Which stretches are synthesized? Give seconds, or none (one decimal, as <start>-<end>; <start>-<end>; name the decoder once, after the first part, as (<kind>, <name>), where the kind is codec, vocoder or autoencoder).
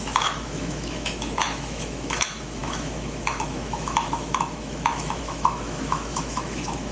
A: 0.0-6.9 (autoencoder, DAC-VAE)